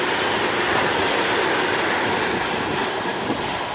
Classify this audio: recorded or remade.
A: recorded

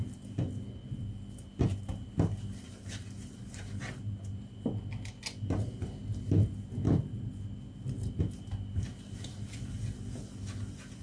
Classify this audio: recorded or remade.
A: recorded